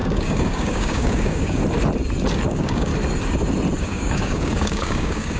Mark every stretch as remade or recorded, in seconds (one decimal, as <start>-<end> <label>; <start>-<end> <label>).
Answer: 0.0-1.6 remade; 1.6-2.5 recorded; 2.5-2.9 remade; 2.9-3.8 recorded; 3.8-5.4 remade